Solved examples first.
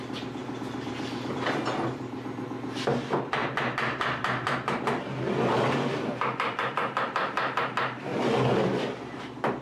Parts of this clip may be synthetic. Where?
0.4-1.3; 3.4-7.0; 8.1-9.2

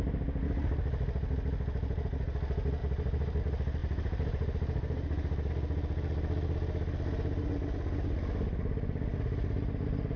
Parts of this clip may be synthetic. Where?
2.8-3.4; 3.8-5.5

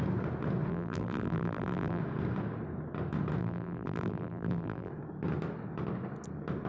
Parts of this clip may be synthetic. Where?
0.7-2.0; 3.4-4.9

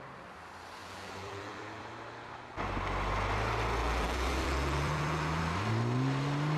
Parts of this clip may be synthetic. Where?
0.8-1.8; 3.8-5.4

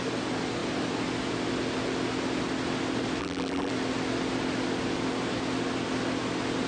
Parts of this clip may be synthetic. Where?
3.2-3.7

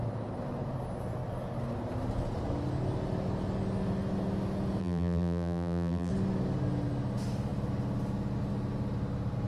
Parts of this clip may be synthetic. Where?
4.8-6.1

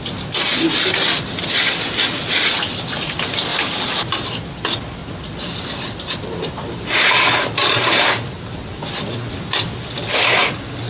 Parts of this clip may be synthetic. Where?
5.0-8.4

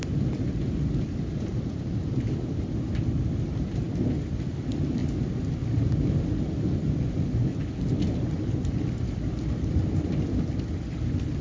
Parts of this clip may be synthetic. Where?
0.0-5.0; 6.4-7.5; 8.2-11.4